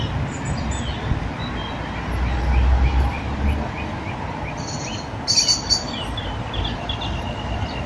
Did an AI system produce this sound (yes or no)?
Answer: no